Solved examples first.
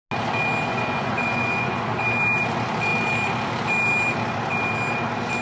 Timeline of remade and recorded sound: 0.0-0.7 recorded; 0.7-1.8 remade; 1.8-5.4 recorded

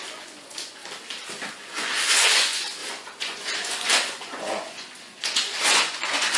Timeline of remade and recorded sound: 0.0-0.8 remade; 0.8-1.5 recorded; 1.5-6.4 remade

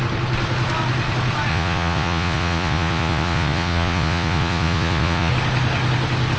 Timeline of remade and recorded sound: 0.0-1.5 recorded; 1.5-5.3 remade; 5.3-6.4 recorded

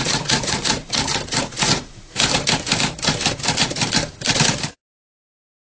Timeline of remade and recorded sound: 0.0-2.1 remade; 2.1-5.7 recorded

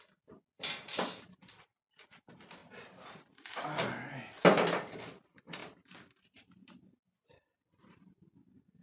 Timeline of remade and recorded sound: 0.0-8.8 recorded